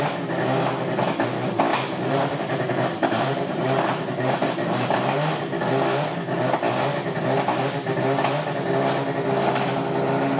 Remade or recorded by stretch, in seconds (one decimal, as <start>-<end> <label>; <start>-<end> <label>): 0.0-1.7 recorded; 1.7-5.4 remade; 5.4-10.4 recorded